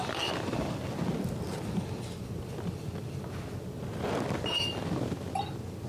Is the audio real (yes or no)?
yes